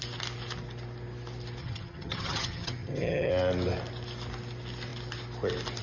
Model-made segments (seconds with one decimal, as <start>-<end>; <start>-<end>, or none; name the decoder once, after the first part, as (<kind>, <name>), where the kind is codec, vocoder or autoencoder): 1.6-3.3 (vocoder, HiFi-GAN)